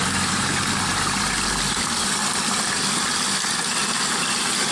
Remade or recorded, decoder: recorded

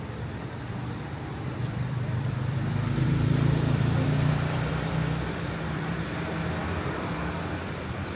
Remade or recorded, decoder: remade, vocoder, BigVGAN v2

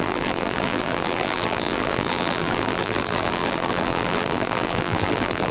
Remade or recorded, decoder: remade, vocoder, BigVGAN v2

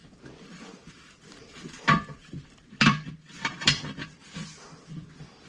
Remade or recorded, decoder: remade, vocoder, BigVGAN v2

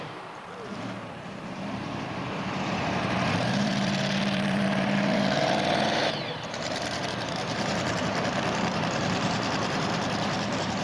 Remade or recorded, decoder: remade, vocoder, BigVGAN v2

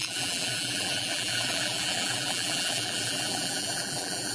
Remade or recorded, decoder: remade, vocoder, BigVGAN v2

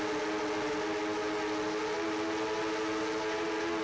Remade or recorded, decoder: recorded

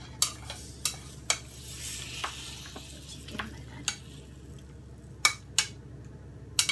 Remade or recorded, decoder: recorded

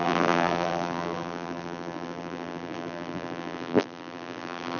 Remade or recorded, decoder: remade, vocoder, BigVGAN v2